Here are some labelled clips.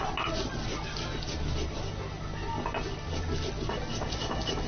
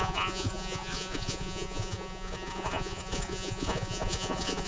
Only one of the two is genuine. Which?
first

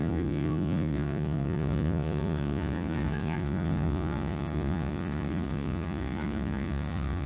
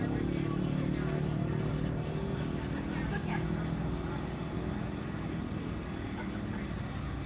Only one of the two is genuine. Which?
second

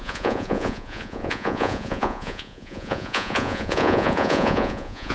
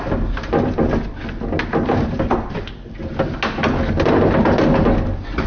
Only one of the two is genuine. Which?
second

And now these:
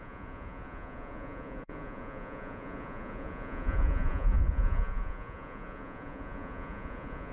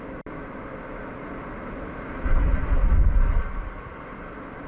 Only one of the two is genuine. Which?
second